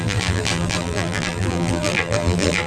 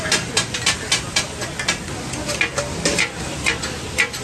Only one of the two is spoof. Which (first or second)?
first